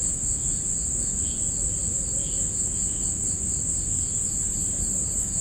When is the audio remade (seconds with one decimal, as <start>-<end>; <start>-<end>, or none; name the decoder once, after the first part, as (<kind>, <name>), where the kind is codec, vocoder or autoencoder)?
4.4-5.4 (vocoder, BigVGAN v2)